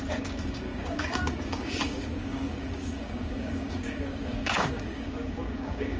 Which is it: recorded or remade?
remade